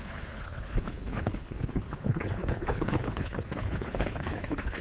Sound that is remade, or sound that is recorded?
remade